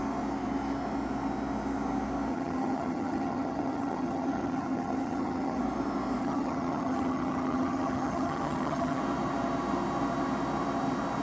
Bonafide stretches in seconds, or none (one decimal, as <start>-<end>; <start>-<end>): 0.0-2.3; 5.6-6.2; 9.0-11.2